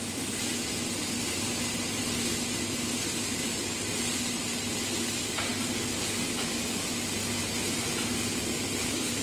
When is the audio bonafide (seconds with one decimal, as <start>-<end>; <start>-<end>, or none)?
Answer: 0.5-4.7; 7.4-8.0